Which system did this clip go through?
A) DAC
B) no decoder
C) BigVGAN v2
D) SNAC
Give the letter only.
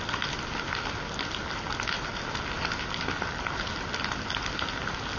B